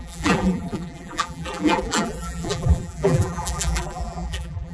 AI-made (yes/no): yes